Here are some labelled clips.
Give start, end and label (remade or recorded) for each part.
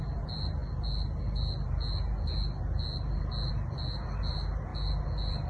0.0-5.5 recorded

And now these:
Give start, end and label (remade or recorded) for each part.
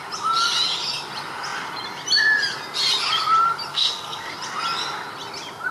0.0-3.7 recorded; 3.7-4.3 remade; 4.3-5.7 recorded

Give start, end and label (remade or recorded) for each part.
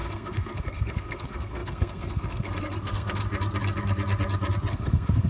0.0-3.2 remade; 3.2-4.7 recorded; 4.7-5.3 remade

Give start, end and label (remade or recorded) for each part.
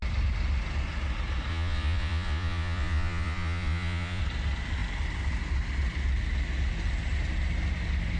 0.0-1.5 recorded; 1.5-4.2 remade; 4.2-8.2 recorded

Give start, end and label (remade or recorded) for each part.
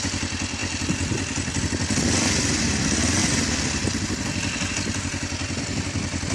0.0-6.3 recorded